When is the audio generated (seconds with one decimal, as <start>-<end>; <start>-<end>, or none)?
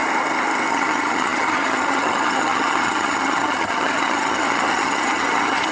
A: 0.7-5.7